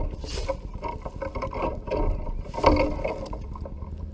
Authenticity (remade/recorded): recorded